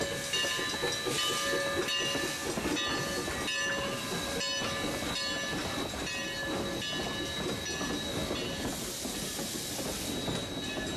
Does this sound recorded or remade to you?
recorded